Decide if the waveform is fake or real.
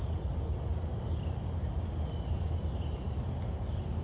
real